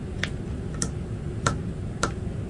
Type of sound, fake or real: real